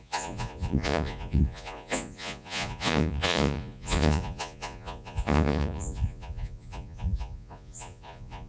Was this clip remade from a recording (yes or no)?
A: yes